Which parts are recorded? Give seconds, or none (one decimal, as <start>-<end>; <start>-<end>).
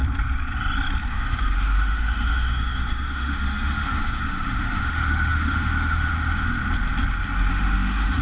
0.0-1.1; 6.6-7.5